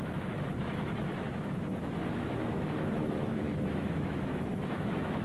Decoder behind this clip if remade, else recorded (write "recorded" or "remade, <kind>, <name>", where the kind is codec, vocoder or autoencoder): remade, autoencoder, DAC-VAE